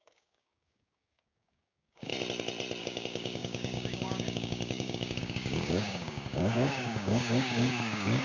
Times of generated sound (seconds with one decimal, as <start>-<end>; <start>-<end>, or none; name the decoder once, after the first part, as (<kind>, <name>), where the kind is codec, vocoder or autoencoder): 0.0-2.1 (codec, DAC); 2.8-8.2